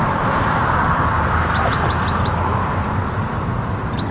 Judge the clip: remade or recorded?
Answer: recorded